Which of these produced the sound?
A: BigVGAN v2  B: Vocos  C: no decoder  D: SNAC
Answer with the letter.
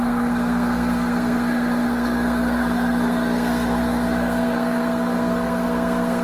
D